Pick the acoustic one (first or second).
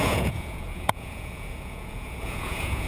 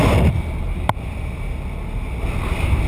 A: second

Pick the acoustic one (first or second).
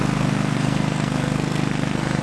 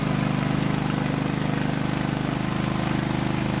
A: second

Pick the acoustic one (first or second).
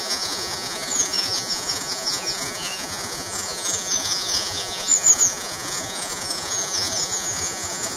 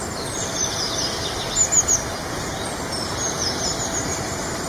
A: second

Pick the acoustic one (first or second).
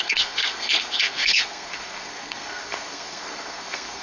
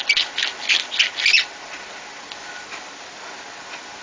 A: second